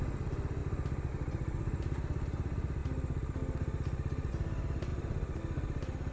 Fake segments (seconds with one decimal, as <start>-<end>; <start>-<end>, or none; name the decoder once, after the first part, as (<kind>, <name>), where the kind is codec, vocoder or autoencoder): none